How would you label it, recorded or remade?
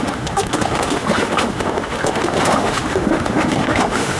remade